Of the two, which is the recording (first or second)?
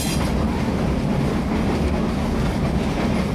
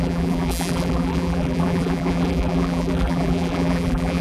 first